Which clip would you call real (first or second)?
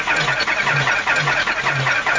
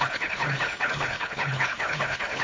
first